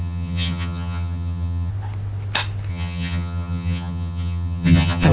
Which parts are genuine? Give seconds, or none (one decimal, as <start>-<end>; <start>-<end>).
1.7-2.7